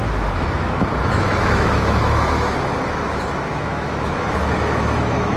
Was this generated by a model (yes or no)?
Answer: yes